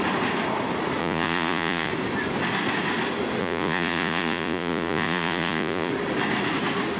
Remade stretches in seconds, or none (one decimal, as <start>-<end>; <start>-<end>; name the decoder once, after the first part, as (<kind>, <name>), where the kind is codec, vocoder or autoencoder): 1.0-1.9 (vocoder, Vocos); 3.4-5.9